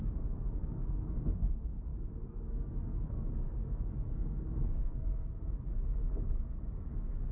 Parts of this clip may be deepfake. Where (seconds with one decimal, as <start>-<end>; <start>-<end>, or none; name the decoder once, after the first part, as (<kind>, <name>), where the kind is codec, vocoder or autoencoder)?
0.0-7.3 (codec, SNAC)